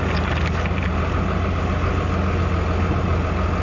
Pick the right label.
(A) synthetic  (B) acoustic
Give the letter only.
B